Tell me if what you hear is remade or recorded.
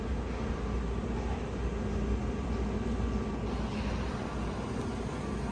recorded